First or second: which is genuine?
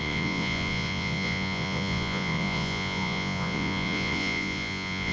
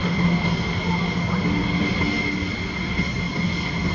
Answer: second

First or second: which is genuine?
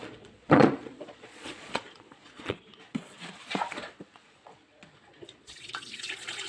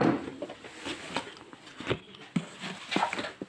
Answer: second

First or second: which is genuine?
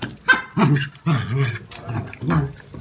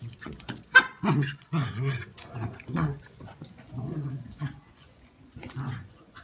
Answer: first